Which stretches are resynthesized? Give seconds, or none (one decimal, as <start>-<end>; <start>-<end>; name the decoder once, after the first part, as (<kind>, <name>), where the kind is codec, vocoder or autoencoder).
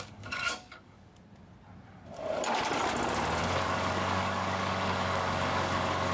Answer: 0.0-1.1 (codec, DAC); 3.4-6.1